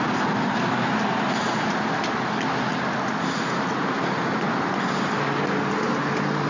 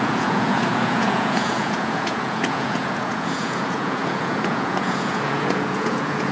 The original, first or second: first